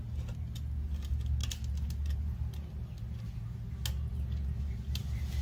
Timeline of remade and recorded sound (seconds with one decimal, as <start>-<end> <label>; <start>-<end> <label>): 0.0-5.4 recorded